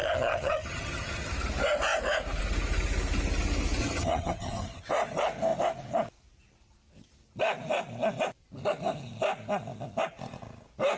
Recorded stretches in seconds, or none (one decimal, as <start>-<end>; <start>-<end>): 1.3-3.8; 4.8-11.0